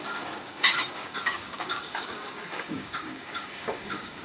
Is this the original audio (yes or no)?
no